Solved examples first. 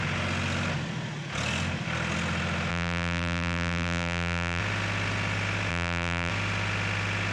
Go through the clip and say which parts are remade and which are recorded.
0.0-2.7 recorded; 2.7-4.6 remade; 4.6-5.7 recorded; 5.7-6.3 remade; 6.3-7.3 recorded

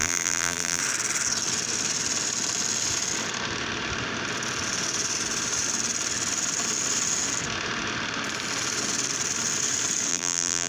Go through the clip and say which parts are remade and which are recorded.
0.0-0.8 remade; 0.8-10.1 recorded; 10.1-10.7 remade

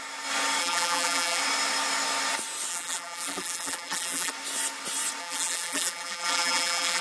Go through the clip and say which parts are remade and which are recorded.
0.0-0.6 recorded; 0.6-1.4 remade; 1.4-2.7 recorded; 2.7-4.3 remade; 4.3-5.2 recorded; 5.2-7.0 remade

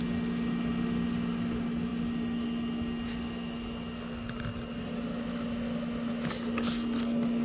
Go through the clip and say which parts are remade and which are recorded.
0.0-7.4 recorded

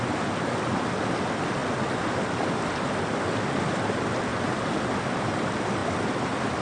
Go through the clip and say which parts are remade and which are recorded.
0.0-6.6 recorded

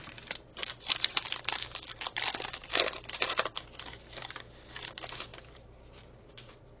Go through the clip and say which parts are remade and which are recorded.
0.0-0.6 recorded; 0.6-1.2 remade; 1.2-5.3 recorded; 5.3-6.3 remade; 6.3-6.8 recorded

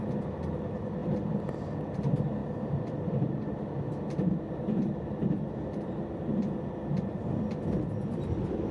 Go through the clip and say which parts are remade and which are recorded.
0.0-1.0 recorded; 1.0-1.5 remade; 1.5-2.4 recorded; 2.4-4.3 remade; 4.3-8.7 recorded

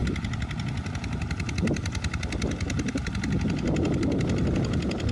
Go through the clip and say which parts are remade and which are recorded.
0.0-5.1 recorded